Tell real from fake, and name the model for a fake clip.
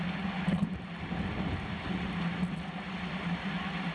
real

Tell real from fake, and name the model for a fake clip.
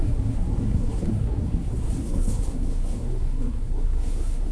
fake, codec, SNAC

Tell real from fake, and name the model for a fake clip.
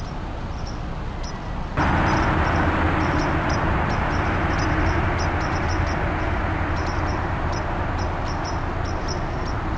real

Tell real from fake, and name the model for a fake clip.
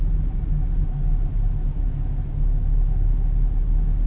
real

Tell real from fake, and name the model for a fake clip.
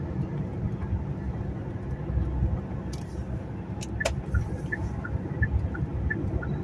real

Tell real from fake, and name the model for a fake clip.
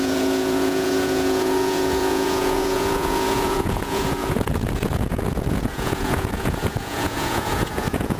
fake, vocoder, Vocos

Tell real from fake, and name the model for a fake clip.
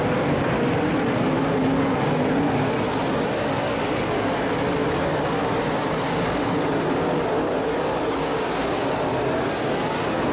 real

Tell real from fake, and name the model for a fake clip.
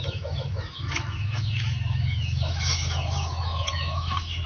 fake, autoencoder, DAC-VAE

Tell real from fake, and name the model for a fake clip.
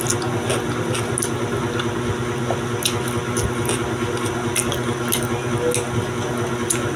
real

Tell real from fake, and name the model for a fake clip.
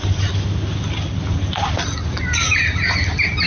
real